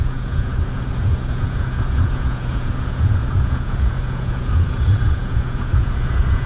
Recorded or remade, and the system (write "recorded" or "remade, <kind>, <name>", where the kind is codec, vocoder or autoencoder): remade, vocoder, Vocos